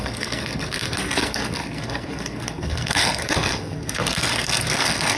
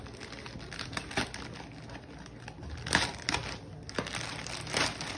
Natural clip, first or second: second